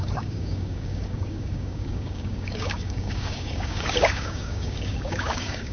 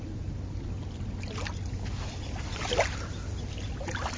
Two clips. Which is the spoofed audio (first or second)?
first